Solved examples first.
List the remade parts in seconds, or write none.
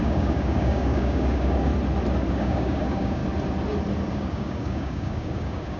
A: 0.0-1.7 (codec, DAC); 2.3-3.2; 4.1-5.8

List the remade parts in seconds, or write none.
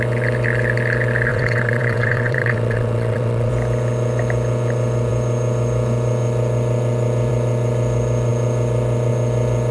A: 1.3-3.5 (vocoder, WaveNeXt)